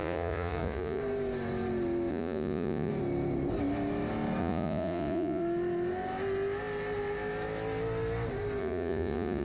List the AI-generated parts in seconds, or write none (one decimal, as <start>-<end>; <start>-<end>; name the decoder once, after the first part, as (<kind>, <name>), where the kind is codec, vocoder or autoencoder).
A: 0.0-1.0 (vocoder, Vocos); 2.1-2.9; 4.4-5.4; 8.6-9.4